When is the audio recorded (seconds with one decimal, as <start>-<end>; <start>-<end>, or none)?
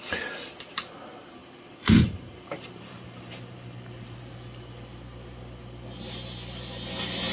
0.0-1.4; 4.2-7.3